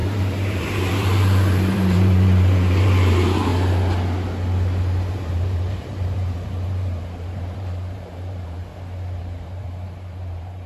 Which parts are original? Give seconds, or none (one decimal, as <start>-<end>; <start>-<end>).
3.5-5.1; 8.6-9.2